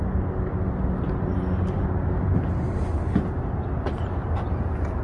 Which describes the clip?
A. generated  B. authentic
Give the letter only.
B